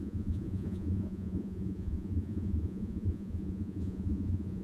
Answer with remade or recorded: remade